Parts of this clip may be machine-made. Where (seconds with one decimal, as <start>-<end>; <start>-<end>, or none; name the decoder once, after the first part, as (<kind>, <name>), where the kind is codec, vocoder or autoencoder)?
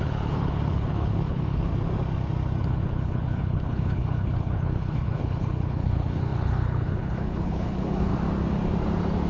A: 0.0-1.7 (codec, HILCodec); 2.6-8.1